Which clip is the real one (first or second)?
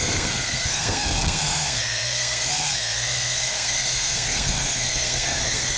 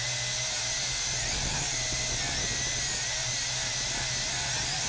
second